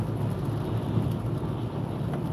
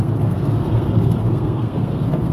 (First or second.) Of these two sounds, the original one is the first